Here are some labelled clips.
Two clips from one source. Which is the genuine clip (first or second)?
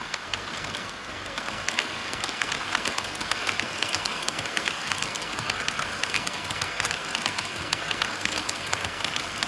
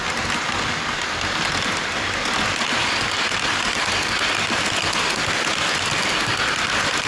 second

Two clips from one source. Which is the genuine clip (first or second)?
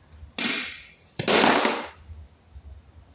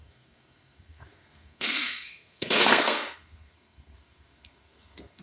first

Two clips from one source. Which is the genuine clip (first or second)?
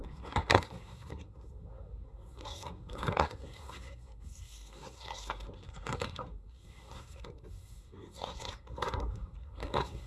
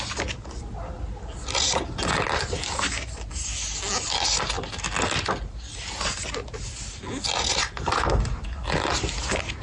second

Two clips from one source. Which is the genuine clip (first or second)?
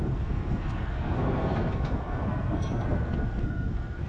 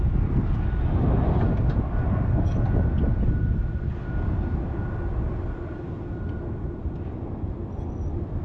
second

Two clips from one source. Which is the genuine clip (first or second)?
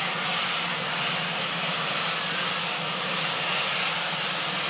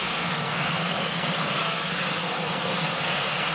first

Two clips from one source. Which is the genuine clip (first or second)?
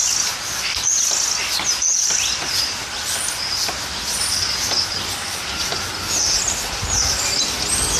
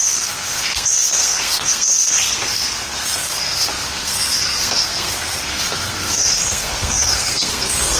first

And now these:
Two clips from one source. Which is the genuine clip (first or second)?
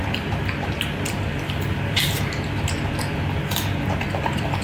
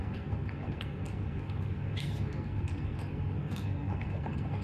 first